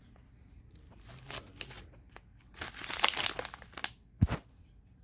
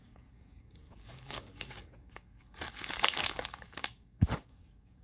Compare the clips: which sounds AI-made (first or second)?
second